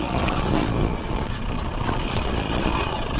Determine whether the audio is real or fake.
fake